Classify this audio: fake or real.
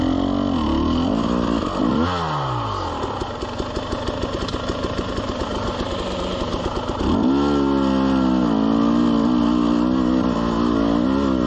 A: real